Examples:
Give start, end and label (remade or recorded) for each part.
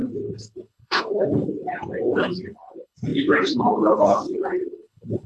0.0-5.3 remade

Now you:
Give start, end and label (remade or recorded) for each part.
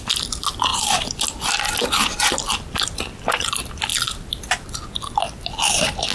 0.0-6.1 recorded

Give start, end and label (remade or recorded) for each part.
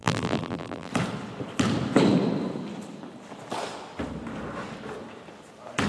0.0-0.9 remade; 0.9-5.9 recorded